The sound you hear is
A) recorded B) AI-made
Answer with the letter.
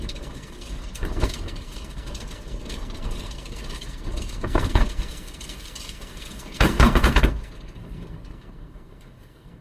B